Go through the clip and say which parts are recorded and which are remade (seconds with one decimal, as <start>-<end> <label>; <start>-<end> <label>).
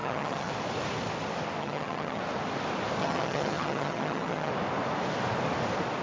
0.0-0.5 remade; 0.5-1.6 recorded; 1.6-2.2 remade; 2.2-3.0 recorded; 3.0-4.5 remade; 4.5-6.0 recorded